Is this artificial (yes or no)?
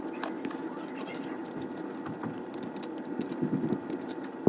no